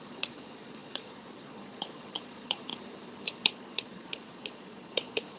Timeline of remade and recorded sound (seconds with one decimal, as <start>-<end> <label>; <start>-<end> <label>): 0.0-2.7 remade; 2.7-3.4 recorded; 3.4-5.4 remade